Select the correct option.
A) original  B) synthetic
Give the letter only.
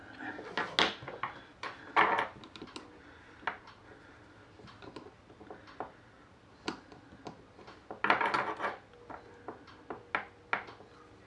A